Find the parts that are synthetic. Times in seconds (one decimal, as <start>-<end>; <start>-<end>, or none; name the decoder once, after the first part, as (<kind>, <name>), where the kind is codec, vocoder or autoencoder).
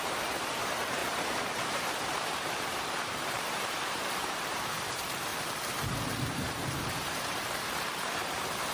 0.0-5.3 (vocoder, BigVGAN v2); 6.0-8.7